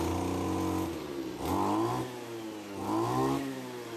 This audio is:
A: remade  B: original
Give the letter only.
B